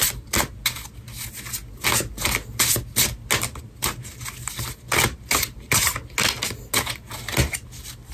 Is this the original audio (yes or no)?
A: yes